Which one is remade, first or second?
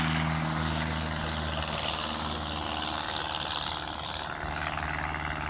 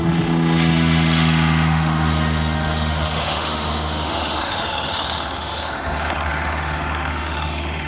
second